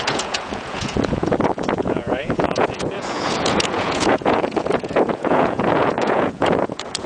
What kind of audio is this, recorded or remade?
remade